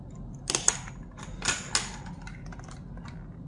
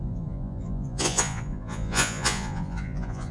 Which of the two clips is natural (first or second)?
first